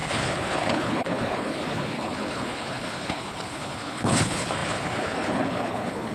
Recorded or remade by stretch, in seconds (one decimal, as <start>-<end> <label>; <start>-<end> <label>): 0.0-6.1 remade